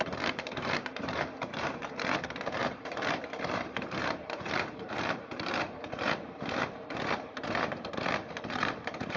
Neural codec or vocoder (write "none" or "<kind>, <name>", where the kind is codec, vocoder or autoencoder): vocoder, BigVGAN v2